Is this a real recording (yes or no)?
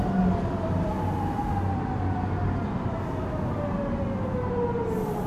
yes